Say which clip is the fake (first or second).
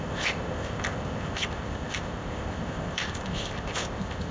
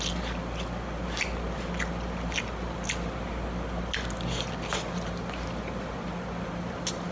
first